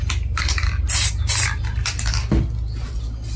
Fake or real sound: real